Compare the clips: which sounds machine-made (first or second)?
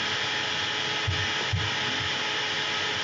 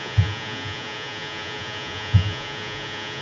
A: second